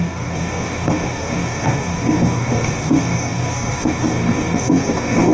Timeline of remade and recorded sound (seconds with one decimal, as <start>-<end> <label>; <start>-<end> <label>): 0.0-5.3 remade